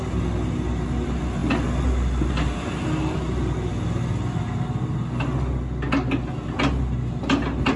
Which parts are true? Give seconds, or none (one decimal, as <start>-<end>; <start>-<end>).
0.0-7.8